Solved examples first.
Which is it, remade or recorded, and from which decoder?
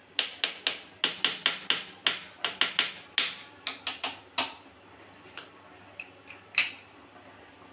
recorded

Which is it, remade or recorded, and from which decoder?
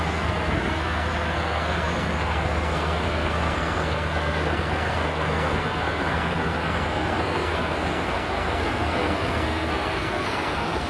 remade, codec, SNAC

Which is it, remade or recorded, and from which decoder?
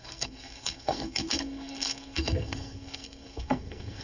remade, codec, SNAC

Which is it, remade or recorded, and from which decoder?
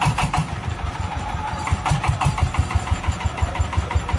remade, vocoder, BigVGAN v2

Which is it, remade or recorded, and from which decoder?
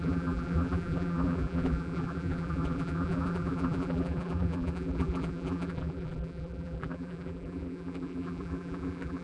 remade, vocoder, BigVGAN v2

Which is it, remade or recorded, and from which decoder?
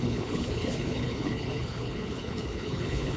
remade, codec, HILCodec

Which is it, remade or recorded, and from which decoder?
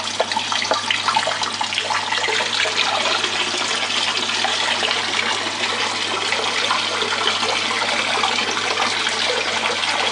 recorded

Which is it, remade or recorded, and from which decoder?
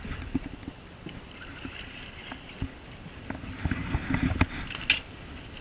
recorded